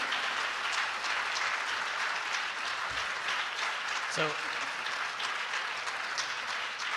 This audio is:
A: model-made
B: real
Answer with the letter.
B